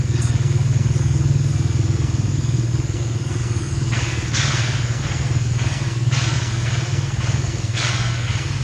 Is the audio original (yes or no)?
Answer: no